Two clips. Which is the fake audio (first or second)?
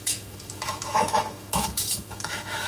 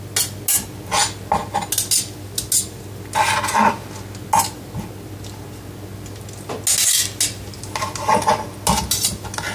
first